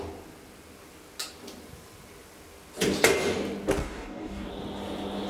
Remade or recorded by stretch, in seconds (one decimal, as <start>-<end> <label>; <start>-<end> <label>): 0.0-3.8 recorded; 3.8-4.5 remade; 4.5-5.3 recorded